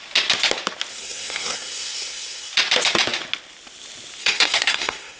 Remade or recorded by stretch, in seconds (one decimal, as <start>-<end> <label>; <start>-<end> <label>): 0.0-0.9 recorded; 0.9-2.5 remade; 2.5-4.2 recorded; 4.2-5.2 remade